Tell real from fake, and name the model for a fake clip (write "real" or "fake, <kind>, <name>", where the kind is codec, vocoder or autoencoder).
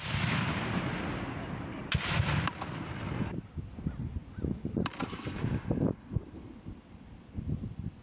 real